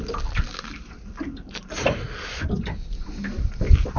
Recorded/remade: recorded